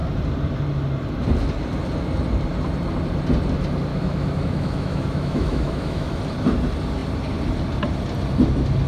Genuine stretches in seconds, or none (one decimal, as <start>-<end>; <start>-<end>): 0.0-3.9; 6.2-8.9